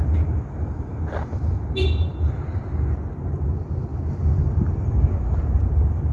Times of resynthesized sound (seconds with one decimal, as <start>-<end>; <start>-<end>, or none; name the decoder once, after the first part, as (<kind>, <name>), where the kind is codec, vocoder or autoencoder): none